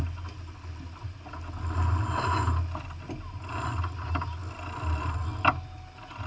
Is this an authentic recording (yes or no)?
yes